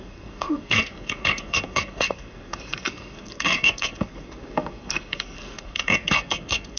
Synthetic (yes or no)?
yes